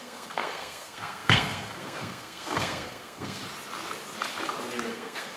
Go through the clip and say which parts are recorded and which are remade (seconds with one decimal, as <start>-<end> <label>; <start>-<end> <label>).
0.0-3.4 remade; 3.4-4.9 recorded; 4.9-5.4 remade